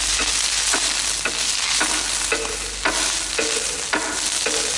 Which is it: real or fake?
real